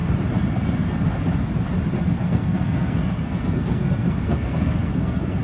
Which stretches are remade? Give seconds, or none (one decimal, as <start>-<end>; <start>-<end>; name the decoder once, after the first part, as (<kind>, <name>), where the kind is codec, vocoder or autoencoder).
2.2-5.4 (codec, SNAC)